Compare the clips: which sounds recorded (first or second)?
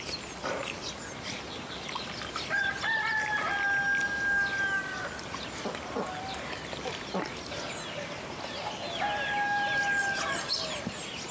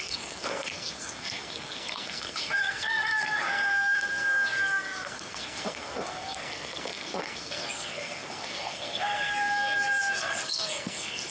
first